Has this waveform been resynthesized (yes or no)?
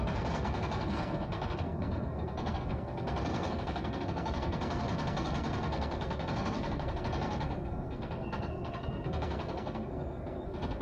yes